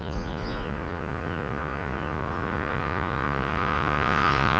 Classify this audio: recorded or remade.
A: remade